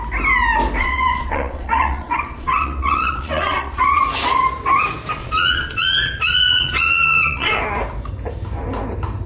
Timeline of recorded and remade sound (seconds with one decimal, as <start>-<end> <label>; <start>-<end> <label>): 0.0-0.8 recorded; 0.8-4.0 remade; 4.0-5.2 recorded; 5.2-7.6 remade; 7.6-9.3 recorded